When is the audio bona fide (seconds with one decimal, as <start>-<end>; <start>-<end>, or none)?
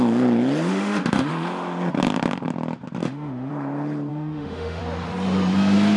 0.0-0.7; 1.3-3.0; 3.5-4.1; 4.8-6.0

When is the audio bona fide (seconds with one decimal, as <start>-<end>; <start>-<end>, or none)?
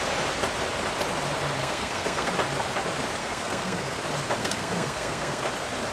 0.0-1.6; 2.3-3.2; 4.0-4.4; 5.4-5.9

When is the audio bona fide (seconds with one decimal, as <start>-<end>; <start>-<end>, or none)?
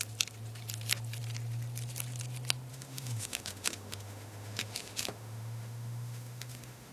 0.0-2.7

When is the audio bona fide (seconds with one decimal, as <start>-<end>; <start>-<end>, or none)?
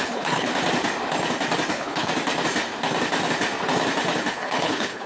0.5-1.7; 2.1-4.3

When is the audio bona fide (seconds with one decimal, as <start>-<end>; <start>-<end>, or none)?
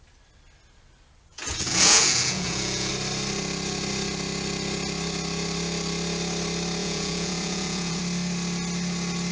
0.0-1.3; 2.9-6.8; 8.0-9.3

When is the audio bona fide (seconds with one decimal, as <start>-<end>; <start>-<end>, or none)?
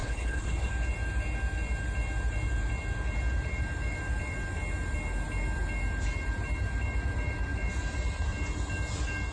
0.7-9.3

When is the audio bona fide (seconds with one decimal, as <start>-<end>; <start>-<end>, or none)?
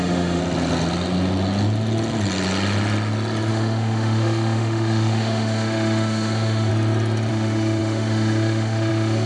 0.4-3.5; 6.7-7.3